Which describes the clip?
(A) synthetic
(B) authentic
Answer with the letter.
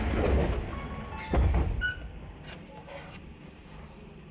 B